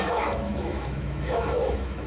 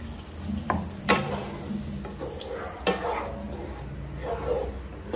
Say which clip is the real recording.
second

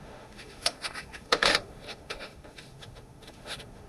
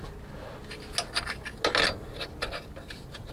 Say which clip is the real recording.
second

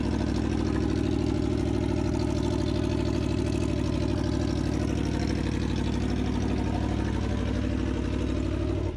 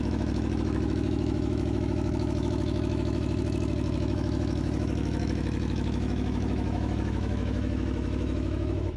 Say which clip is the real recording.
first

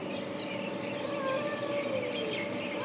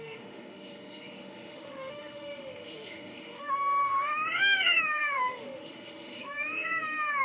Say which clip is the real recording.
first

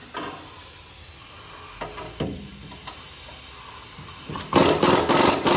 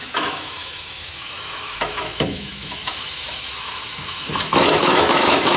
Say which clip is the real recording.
first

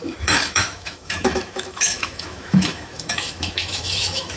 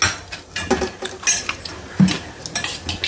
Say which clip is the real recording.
second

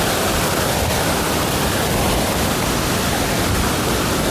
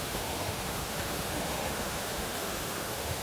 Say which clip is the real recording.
first